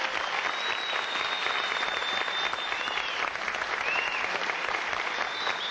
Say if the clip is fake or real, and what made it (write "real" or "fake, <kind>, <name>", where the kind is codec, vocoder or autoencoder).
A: real